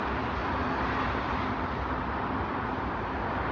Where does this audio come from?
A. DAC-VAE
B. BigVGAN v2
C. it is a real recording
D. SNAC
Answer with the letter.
C